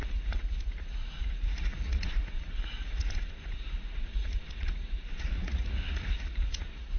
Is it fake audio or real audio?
fake